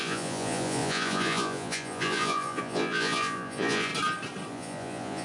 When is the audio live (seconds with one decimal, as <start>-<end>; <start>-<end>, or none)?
3.9-4.5